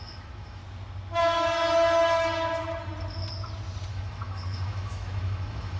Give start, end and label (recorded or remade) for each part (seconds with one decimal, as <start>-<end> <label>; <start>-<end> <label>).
0.0-0.6 remade; 0.6-3.9 recorded; 3.9-5.8 remade